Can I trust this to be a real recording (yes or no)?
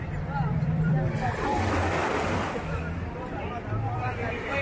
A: no